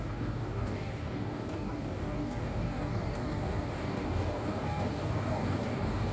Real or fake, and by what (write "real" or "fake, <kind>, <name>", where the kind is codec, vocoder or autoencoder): fake, codec, DAC